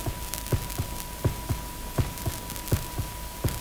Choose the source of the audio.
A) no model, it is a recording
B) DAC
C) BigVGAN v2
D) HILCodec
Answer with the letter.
A